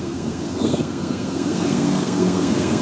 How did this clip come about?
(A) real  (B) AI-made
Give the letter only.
B